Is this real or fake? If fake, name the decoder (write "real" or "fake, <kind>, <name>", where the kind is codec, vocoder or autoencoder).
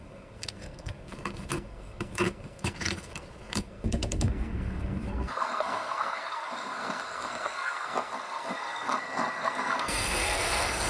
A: fake, codec, SNAC